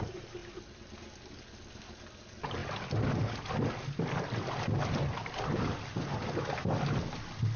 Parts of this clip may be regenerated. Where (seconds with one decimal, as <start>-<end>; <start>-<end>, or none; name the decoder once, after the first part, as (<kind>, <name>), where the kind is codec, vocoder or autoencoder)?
none